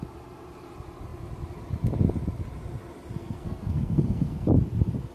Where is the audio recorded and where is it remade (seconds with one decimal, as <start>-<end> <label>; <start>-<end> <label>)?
0.0-3.2 recorded; 3.2-4.5 remade; 4.5-5.1 recorded

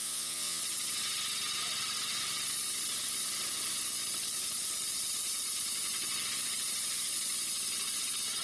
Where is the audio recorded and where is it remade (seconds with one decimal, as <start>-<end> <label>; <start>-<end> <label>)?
0.0-0.6 remade; 0.6-8.4 recorded

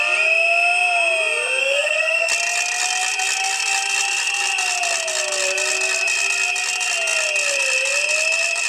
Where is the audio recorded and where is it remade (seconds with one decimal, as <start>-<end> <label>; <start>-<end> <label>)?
0.0-1.6 recorded; 1.6-2.3 remade; 2.3-8.7 recorded

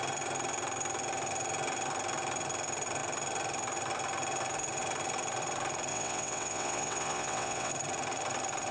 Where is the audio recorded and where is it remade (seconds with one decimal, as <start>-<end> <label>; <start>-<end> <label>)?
0.0-5.9 recorded; 5.9-7.7 remade; 7.7-8.7 recorded

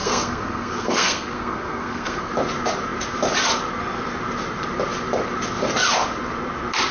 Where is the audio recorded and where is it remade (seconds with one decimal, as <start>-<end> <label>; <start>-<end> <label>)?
0.0-2.3 remade; 2.3-6.9 recorded

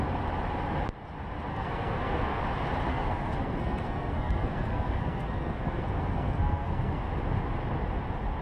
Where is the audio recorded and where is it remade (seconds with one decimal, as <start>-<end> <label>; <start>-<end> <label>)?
0.0-1.5 recorded; 1.5-2.4 remade; 2.4-2.9 recorded; 2.9-7.0 remade; 7.0-8.4 recorded